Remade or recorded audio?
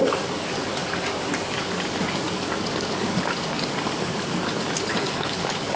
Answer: remade